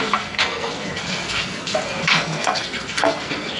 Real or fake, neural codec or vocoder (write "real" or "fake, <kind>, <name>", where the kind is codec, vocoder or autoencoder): fake, codec, SNAC